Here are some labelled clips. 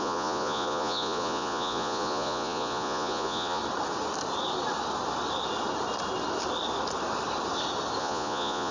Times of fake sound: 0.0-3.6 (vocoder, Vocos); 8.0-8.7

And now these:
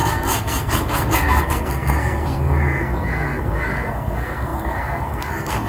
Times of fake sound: 0.0-5.7 (codec, SNAC)

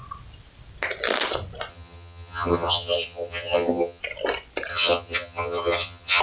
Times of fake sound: 1.7-4.0 (vocoder, HiFi-GAN); 4.7-6.2

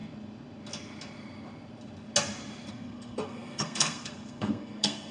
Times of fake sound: 2.7-5.1 (codec, SNAC)

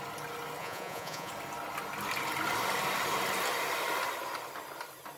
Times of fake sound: 0.6-1.3 (vocoder, Vocos)

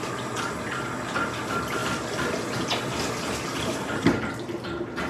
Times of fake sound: none

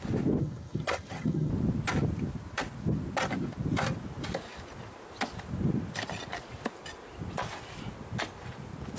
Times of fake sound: 0.4-1.5 (vocoder, HiFi-GAN)

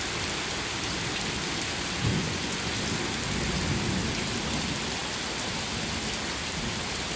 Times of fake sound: 2.1-2.7 (vocoder, Vocos)